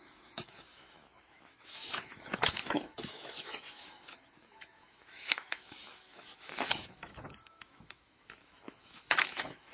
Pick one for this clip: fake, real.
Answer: fake